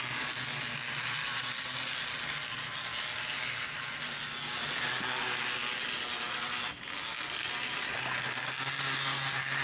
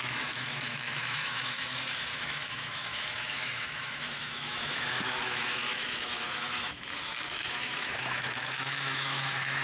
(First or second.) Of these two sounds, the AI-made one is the second